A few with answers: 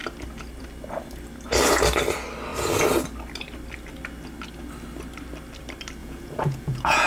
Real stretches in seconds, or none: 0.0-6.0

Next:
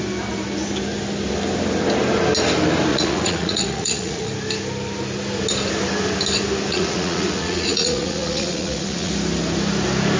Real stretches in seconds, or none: 0.0-2.9; 4.3-6.7; 9.1-10.2

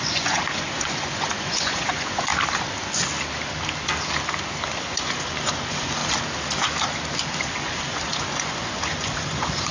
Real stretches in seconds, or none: 2.3-4.8; 6.0-7.3